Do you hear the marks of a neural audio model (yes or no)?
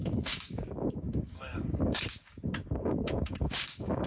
yes